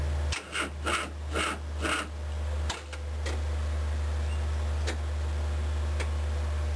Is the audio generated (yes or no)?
no